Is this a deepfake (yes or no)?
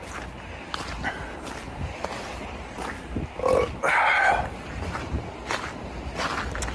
no